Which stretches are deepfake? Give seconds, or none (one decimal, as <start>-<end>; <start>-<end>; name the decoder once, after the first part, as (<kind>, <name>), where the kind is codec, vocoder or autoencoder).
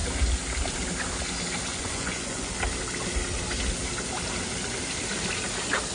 1.7-2.5 (vocoder, Vocos)